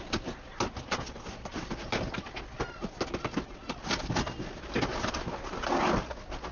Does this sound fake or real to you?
real